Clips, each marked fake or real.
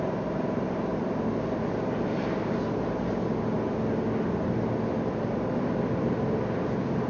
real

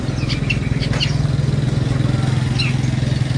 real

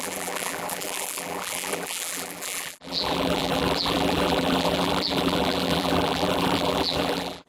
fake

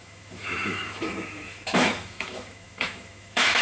fake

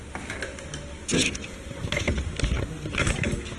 real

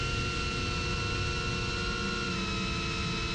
real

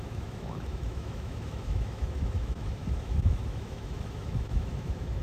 fake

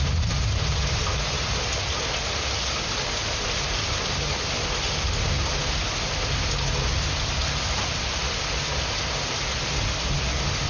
real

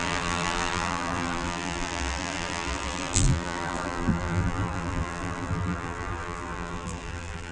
fake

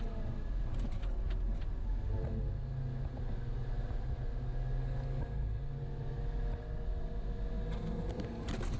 real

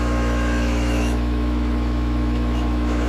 fake